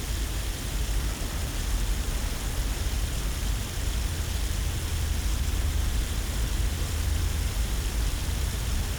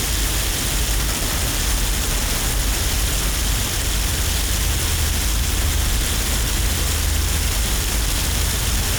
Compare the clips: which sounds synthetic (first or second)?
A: first